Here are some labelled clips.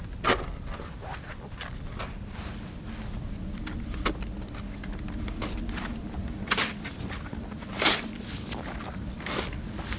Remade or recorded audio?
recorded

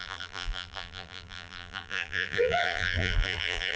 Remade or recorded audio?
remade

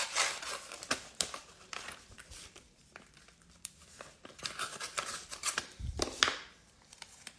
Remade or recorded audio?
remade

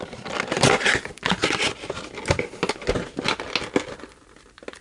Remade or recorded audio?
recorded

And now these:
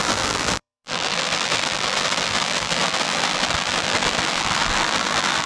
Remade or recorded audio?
remade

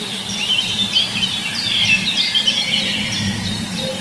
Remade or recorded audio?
recorded